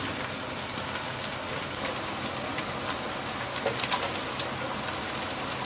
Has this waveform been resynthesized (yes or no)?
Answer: no